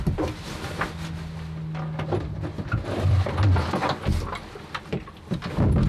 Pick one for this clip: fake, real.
real